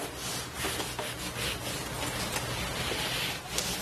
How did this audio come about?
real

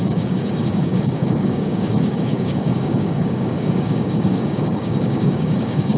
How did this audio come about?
fake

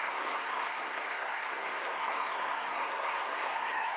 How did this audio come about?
fake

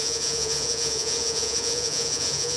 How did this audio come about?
fake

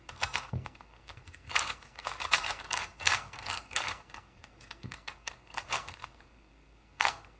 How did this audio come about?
fake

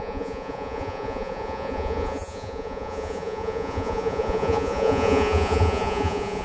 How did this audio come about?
fake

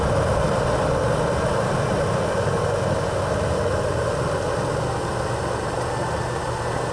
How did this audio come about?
real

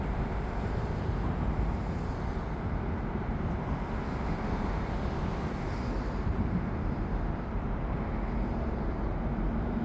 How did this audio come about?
fake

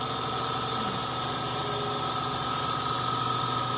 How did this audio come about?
real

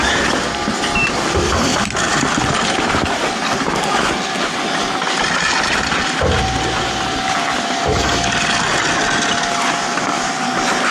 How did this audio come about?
real